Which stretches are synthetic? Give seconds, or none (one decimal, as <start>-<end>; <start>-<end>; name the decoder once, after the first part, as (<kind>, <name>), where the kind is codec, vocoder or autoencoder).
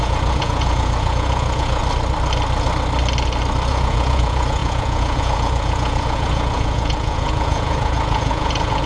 0.0-1.8 (vocoder, Vocos); 3.7-8.9